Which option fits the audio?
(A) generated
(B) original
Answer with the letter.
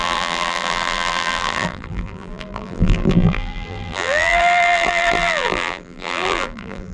A